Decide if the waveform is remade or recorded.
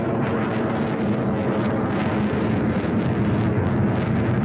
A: recorded